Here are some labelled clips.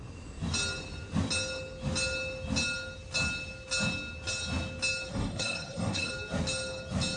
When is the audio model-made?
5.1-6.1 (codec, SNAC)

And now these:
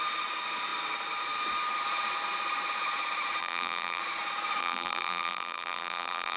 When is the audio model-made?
3.4-4.0 (vocoder, BigVGAN v2); 4.6-6.4

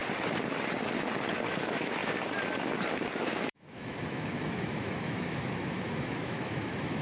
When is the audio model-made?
1.6-2.0 (autoencoder, DAC-VAE); 3.2-7.0

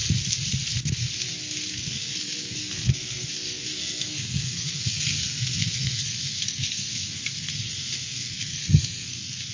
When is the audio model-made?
1.7-9.5 (codec, SNAC)

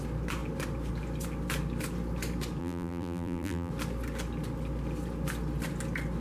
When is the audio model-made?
2.6-3.7 (vocoder, BigVGAN v2)

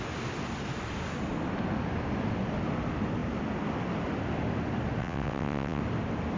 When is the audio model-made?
5.0-5.8 (vocoder, WaveNeXt)